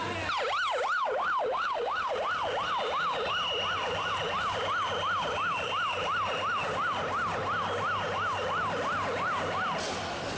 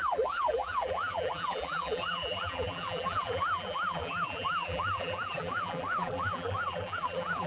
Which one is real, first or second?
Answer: first